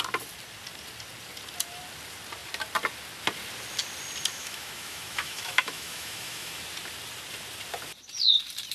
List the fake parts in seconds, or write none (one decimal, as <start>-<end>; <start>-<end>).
4.3-6.6